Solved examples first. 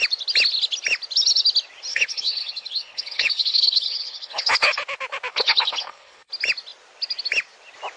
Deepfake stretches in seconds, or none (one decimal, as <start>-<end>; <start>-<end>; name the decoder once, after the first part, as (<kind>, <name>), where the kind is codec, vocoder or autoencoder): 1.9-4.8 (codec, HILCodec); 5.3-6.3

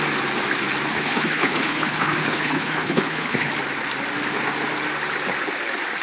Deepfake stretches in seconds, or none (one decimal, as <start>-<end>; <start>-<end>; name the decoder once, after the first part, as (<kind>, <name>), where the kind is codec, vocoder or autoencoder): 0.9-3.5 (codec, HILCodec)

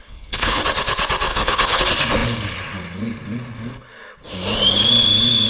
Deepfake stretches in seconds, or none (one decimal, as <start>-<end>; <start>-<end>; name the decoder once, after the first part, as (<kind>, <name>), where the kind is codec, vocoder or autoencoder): 0.0-0.6 (codec, HILCodec); 1.3-1.8

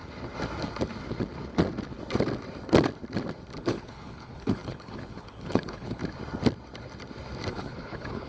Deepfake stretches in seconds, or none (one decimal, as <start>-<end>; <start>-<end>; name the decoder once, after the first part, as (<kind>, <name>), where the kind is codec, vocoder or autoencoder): 3.6-6.0 (codec, HILCodec); 7.5-8.3

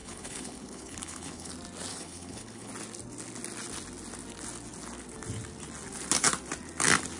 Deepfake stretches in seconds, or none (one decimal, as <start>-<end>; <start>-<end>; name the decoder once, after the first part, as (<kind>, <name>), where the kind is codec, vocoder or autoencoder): 0.0-1.5 (codec, HILCodec); 1.9-2.7

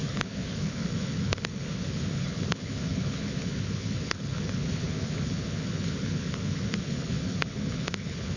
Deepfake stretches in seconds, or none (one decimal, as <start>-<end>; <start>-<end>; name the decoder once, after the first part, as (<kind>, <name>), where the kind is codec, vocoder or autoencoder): 0.0-8.4 (codec, HILCodec)